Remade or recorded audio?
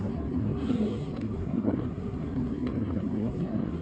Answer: remade